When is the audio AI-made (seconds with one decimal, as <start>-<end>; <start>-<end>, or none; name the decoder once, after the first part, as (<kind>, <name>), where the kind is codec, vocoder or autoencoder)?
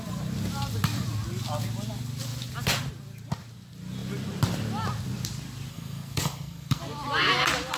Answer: 5.7-6.8 (codec, SNAC)